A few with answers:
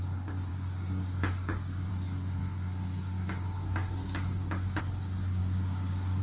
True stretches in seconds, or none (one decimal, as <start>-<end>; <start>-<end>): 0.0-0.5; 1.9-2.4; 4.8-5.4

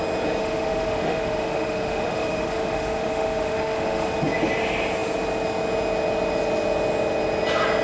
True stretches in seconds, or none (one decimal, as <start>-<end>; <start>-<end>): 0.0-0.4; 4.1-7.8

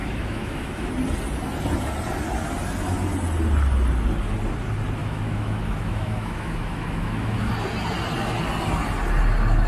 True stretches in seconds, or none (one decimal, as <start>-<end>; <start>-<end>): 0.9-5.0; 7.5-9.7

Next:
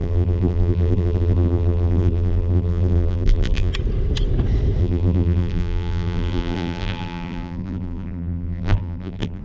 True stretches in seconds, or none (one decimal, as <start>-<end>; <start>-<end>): 3.7-4.8

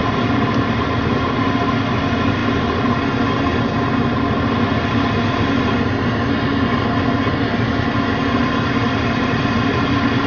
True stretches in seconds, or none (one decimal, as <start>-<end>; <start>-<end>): 1.0-8.4

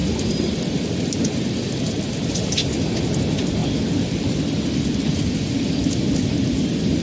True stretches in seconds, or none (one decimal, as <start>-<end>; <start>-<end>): 0.0-7.0

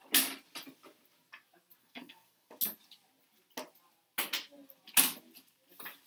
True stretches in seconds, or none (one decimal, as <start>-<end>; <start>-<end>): 0.0-1.8; 2.5-6.1